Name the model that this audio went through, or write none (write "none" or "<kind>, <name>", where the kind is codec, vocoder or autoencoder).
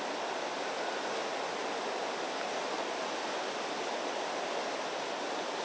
none